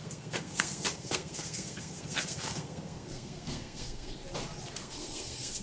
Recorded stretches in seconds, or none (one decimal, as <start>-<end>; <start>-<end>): 4.2-4.7

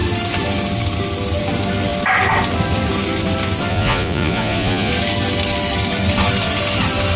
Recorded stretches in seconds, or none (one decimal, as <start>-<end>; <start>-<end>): 0.0-3.7; 4.9-7.2

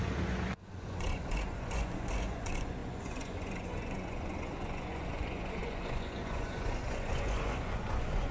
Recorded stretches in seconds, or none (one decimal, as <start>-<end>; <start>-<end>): none

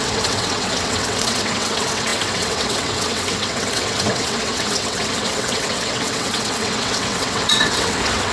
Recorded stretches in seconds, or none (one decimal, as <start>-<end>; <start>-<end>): none

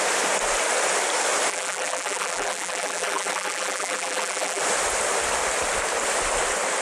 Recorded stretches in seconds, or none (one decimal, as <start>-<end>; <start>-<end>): 0.0-1.5; 4.6-6.8